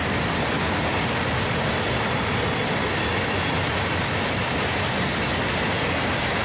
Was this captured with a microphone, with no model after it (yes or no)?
yes